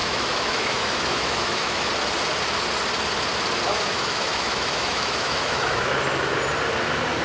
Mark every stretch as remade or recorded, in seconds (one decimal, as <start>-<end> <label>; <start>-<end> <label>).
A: 0.0-1.9 remade; 1.9-3.9 recorded; 3.9-5.9 remade; 5.9-7.2 recorded